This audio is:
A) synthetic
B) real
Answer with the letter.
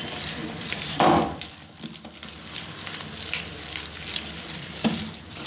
A